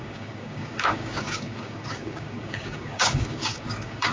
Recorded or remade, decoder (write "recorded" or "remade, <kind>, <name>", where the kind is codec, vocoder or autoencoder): remade, codec, DAC